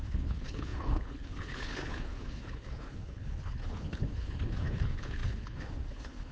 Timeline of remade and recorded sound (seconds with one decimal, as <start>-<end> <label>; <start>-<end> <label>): 0.0-6.3 remade